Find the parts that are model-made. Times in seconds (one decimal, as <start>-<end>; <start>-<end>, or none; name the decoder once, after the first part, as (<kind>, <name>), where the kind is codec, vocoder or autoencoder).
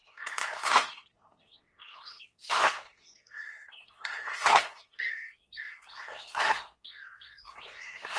0.0-8.2 (codec, SNAC)